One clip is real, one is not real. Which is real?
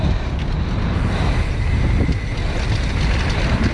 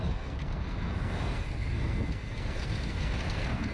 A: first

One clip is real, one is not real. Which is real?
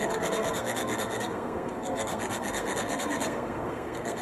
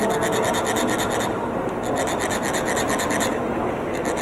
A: second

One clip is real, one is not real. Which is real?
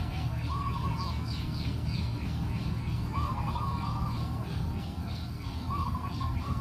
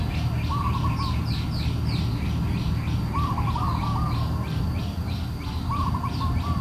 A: second